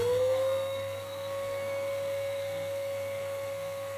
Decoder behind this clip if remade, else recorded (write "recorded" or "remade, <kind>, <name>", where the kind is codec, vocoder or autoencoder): remade, codec, SNAC